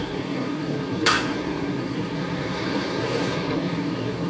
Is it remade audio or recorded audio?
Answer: remade